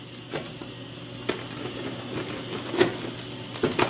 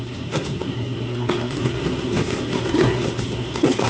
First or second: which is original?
first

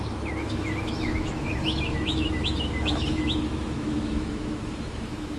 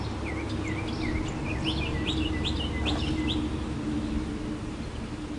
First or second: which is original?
second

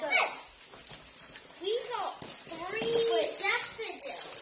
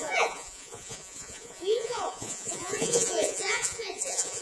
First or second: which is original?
first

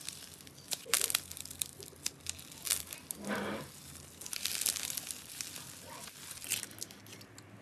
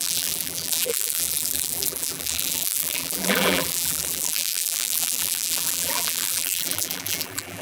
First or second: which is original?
first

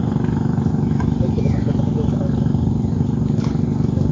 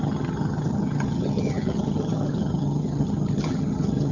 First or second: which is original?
first